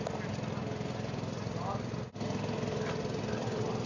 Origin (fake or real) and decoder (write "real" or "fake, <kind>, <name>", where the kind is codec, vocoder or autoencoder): real